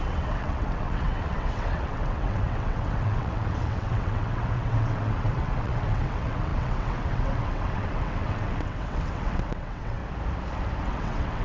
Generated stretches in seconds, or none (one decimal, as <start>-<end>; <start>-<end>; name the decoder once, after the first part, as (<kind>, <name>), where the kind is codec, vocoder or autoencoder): 0.0-10.0 (vocoder, WaveNeXt); 10.8-11.4